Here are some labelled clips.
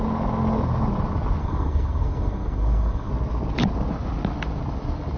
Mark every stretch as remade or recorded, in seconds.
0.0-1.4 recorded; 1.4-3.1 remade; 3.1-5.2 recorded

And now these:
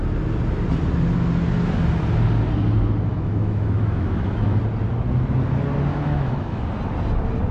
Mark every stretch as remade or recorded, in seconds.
0.0-3.1 recorded; 3.1-4.6 remade; 4.6-5.9 recorded; 5.9-6.6 remade; 6.6-7.5 recorded

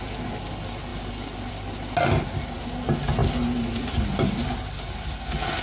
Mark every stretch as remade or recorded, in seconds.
0.0-5.6 recorded

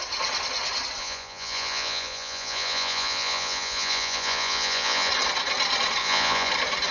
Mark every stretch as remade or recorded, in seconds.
0.0-1.0 recorded; 1.0-5.1 remade; 5.1-6.0 recorded; 6.0-6.5 remade; 6.5-6.9 recorded

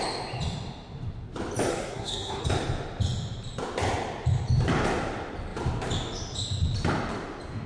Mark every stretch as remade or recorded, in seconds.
0.0-1.7 recorded; 1.7-2.4 remade; 2.4-7.7 recorded